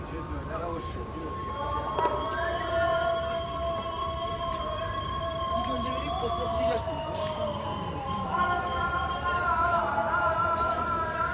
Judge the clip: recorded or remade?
remade